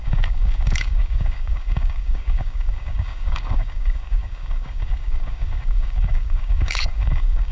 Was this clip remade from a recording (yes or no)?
yes